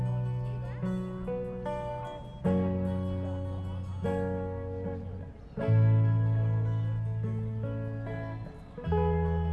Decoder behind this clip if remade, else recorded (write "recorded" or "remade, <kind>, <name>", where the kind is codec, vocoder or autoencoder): recorded